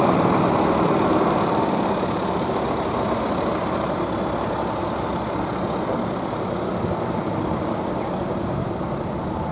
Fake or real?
real